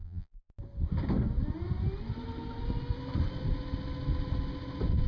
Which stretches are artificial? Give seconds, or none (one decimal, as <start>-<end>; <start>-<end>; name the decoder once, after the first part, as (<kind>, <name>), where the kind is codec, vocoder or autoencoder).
0.0-0.5 (vocoder, BigVGAN v2)